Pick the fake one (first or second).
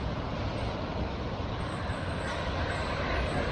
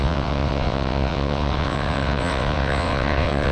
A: second